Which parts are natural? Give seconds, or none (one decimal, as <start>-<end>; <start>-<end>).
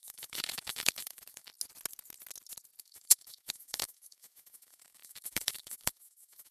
1.5-2.8